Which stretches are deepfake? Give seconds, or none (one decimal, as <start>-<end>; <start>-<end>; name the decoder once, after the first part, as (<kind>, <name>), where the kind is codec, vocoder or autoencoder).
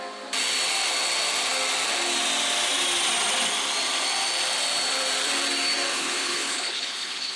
5.9-7.4 (codec, HILCodec)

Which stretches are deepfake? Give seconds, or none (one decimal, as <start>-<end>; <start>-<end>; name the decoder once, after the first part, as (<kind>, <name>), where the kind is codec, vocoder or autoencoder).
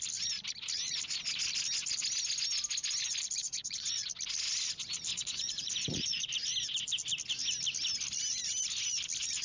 3.4-4.1 (vocoder, Vocos); 5.1-6.3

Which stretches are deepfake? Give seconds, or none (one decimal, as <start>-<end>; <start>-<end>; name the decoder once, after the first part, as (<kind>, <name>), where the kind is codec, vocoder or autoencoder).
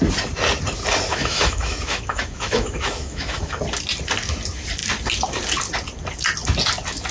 1.1-3.6 (autoencoder, DAC-VAE)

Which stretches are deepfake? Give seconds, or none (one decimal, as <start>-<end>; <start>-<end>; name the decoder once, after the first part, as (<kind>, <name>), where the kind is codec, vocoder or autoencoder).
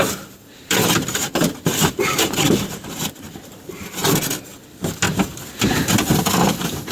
0.0-4.1 (vocoder, BigVGAN v2)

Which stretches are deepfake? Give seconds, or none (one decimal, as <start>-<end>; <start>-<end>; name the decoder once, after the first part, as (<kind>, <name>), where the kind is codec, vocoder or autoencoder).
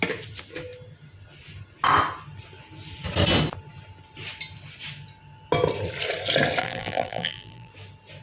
6.6-7.7 (vocoder, BigVGAN v2)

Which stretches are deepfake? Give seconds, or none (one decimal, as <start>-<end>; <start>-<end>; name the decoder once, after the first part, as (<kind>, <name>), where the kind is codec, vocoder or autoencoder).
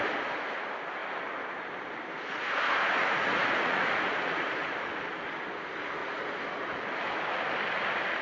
3.0-4.4 (vocoder, Vocos); 6.0-6.8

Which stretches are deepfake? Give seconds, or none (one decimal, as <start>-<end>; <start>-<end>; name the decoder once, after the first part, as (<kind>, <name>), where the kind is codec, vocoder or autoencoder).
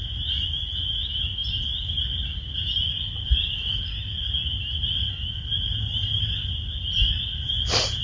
none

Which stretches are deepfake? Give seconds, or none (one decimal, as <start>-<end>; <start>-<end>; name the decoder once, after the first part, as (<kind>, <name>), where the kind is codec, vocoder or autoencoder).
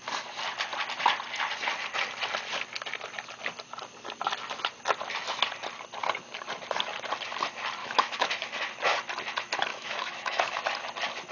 7.8-8.7 (autoencoder, DAC-VAE); 9.7-10.6